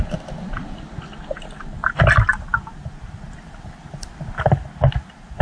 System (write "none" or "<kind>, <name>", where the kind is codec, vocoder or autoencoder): none